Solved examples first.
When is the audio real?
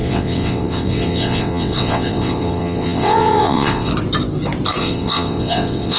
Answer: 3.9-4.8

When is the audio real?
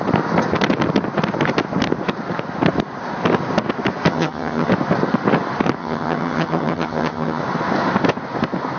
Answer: 0.0-4.1; 4.7-5.8; 7.4-8.8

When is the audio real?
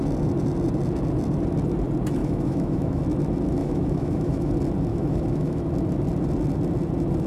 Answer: 0.0-2.2; 3.0-3.6; 4.5-4.9; 5.6-7.3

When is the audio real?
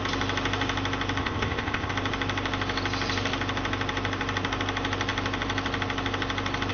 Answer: 0.0-1.2; 1.9-6.7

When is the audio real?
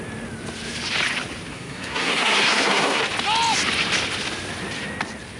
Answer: 0.0-1.5; 3.0-5.4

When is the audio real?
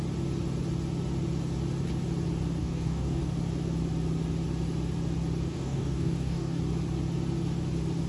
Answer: 0.0-2.6; 3.2-5.5; 6.6-8.1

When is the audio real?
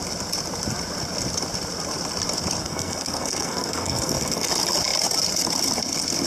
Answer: 0.0-2.6; 4.5-6.3